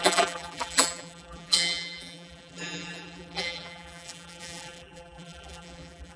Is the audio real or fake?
fake